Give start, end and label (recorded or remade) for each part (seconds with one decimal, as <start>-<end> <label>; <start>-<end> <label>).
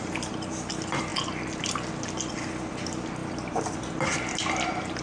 0.0-5.0 recorded